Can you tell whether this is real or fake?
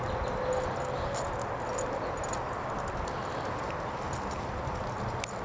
real